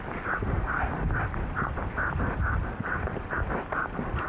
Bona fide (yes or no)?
yes